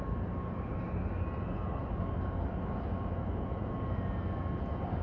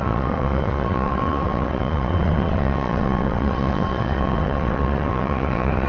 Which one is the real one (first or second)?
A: first